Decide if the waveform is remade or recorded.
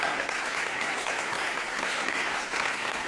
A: remade